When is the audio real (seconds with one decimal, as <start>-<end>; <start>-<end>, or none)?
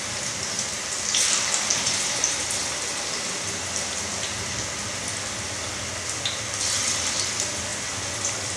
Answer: 0.0-1.7; 2.6-8.6